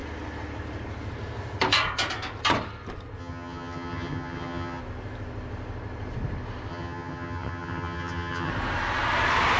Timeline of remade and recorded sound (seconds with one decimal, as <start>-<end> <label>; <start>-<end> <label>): 0.0-3.2 recorded; 3.2-4.8 remade; 4.8-6.7 recorded; 6.7-8.5 remade; 8.5-9.6 recorded